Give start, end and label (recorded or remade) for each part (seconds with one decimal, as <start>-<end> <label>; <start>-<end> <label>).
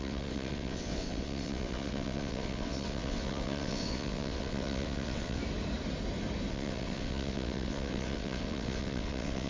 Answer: 0.0-5.4 remade; 5.4-6.5 recorded; 6.5-9.5 remade